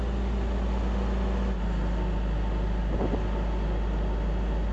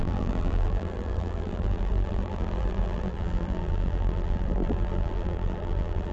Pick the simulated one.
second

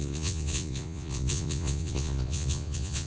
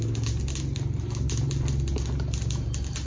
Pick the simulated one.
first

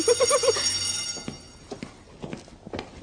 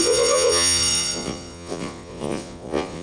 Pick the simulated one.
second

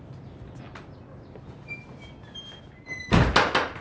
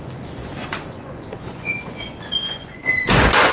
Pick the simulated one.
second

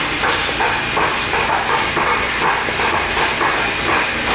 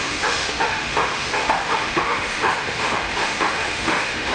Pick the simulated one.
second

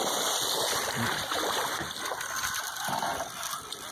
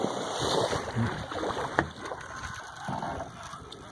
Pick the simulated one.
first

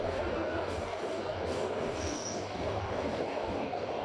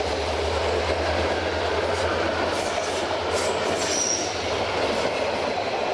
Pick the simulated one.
first